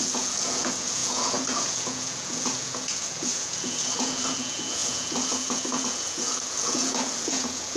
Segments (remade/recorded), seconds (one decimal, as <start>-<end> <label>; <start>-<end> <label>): 0.0-7.8 remade